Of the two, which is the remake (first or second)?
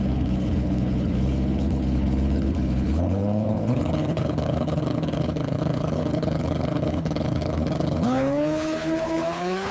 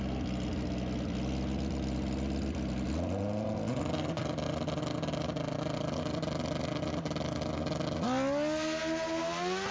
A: first